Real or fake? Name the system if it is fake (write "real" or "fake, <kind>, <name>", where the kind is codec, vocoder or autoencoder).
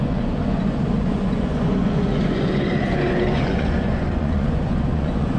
fake, vocoder, Vocos